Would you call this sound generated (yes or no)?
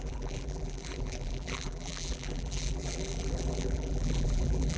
yes